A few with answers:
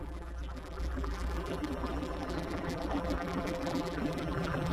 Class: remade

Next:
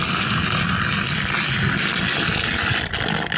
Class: recorded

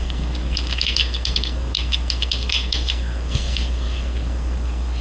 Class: remade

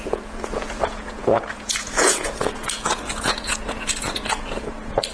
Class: remade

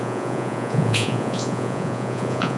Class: remade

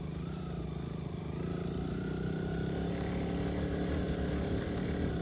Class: recorded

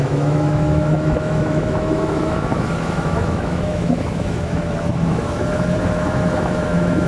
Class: remade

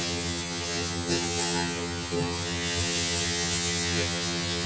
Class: remade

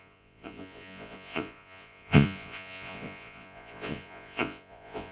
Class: remade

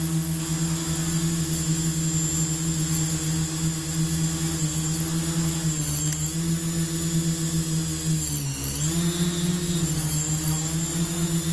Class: recorded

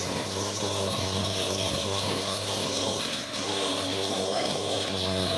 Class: remade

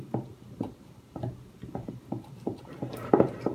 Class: remade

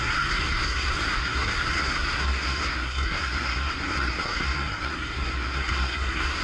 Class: remade